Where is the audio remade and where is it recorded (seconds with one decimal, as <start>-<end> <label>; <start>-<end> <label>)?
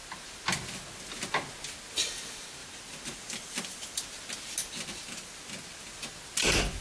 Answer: 0.0-6.8 recorded